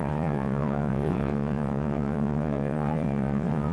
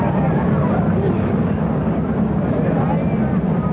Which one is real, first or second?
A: second